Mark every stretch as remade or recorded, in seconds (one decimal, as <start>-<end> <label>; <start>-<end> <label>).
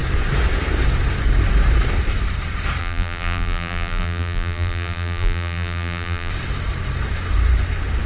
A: 0.0-2.8 recorded; 2.8-6.3 remade; 6.3-8.1 recorded